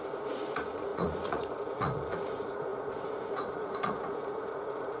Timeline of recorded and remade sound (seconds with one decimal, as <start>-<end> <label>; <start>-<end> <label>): 0.0-5.0 remade